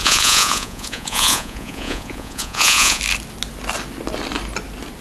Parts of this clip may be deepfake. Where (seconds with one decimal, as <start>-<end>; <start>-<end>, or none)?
0.0-3.0